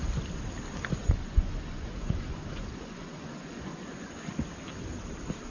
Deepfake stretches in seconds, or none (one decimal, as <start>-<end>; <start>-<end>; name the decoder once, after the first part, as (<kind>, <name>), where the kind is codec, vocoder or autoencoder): 1.0-4.3 (vocoder, Vocos)